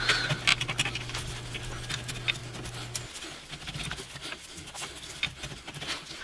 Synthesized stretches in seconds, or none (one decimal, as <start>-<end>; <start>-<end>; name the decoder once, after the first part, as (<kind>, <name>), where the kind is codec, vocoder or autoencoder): none